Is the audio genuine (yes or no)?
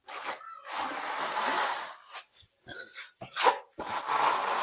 yes